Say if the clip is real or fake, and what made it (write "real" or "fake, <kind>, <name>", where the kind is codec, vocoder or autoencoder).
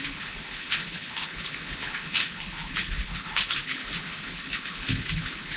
fake, codec, HILCodec